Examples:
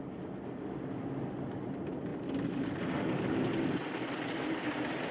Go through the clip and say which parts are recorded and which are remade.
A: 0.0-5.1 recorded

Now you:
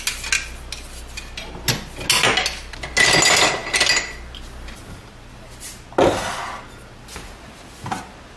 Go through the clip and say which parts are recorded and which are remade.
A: 0.0-8.4 recorded

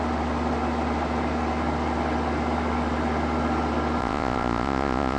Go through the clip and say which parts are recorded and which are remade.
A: 0.0-4.0 recorded; 4.0-5.2 remade

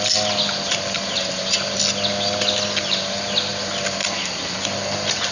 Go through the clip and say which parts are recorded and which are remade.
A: 0.0-5.3 recorded

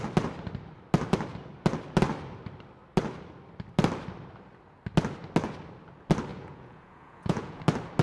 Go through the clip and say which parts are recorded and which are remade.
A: 0.0-6.3 recorded; 6.3-7.6 remade; 7.6-8.0 recorded